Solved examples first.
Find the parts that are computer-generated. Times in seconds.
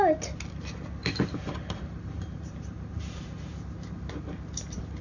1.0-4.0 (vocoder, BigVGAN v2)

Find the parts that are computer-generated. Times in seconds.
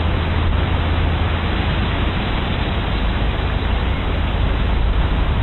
1.8-4.3 (vocoder, BigVGAN v2)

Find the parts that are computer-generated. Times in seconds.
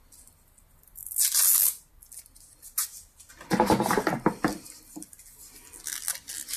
none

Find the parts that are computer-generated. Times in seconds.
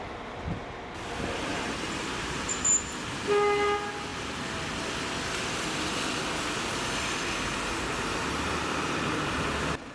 1.5-2.5 (vocoder, BigVGAN v2)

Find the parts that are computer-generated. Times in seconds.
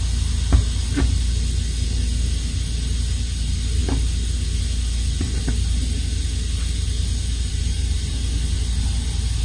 7.5-8.1 (vocoder, BigVGAN v2)